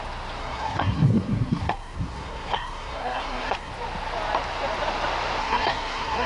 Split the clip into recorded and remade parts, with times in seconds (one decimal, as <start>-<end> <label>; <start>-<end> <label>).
0.0-0.4 recorded; 0.4-3.7 remade; 3.7-5.4 recorded; 5.4-6.3 remade